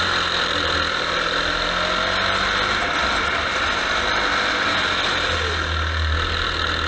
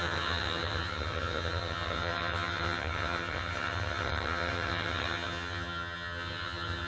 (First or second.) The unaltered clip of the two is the first